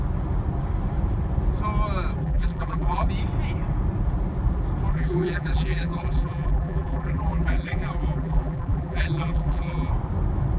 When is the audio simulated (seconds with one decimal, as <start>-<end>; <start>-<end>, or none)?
2.2-3.1; 4.9-9.9